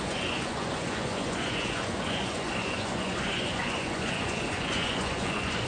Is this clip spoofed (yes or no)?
yes